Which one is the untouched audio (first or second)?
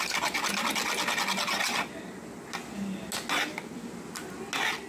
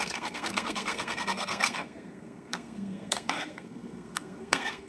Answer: first